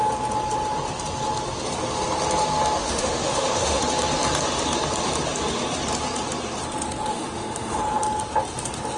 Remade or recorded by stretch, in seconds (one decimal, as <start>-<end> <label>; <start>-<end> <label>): 0.0-2.8 recorded; 2.8-3.8 remade; 3.8-7.1 recorded; 7.1-7.8 remade; 7.8-9.0 recorded